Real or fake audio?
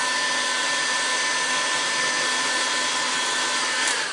real